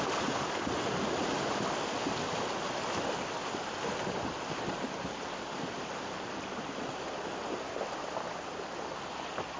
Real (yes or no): yes